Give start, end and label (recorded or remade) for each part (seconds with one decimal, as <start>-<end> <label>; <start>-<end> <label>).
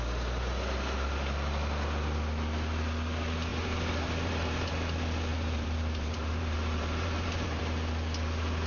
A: 0.0-3.5 recorded; 3.5-4.7 remade; 4.7-5.3 recorded; 5.3-7.6 remade; 7.6-8.7 recorded